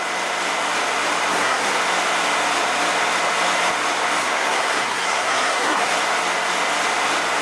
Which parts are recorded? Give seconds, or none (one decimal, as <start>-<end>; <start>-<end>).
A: 0.0-1.3; 1.8-4.2; 5.9-7.4